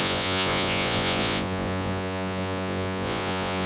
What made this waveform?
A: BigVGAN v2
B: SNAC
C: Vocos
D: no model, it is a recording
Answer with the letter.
C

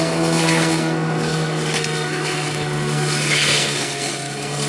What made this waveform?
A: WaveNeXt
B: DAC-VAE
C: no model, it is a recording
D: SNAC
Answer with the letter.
D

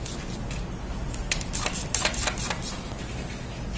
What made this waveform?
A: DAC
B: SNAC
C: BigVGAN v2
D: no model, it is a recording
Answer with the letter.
D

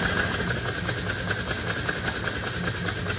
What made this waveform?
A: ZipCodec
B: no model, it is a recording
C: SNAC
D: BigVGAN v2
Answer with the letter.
B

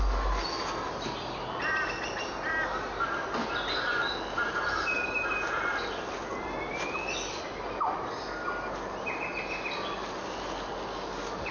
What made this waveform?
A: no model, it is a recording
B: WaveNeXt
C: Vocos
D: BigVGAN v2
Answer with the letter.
A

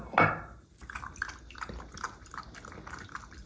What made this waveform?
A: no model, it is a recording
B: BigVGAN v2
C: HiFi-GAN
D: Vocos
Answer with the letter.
A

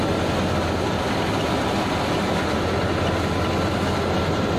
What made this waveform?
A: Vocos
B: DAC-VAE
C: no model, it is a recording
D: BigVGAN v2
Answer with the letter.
C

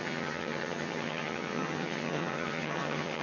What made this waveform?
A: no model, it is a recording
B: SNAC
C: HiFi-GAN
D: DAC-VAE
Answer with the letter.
C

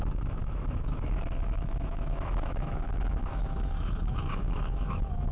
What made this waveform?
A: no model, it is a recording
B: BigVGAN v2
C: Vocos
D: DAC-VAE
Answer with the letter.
D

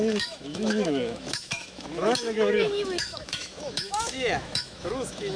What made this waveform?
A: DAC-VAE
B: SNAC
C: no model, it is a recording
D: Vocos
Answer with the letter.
A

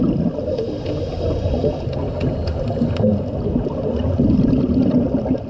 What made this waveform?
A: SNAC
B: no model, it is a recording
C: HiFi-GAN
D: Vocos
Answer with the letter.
B